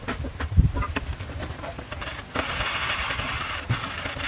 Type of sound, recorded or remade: remade